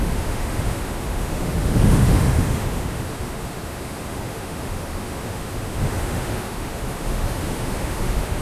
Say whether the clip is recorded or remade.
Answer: remade